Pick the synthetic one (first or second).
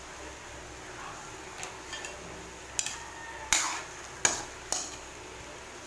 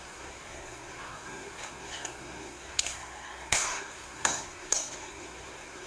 second